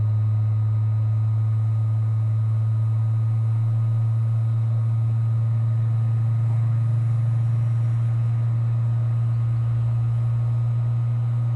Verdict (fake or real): real